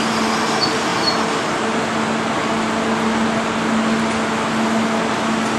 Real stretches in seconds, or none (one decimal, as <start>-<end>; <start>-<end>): 0.0-5.6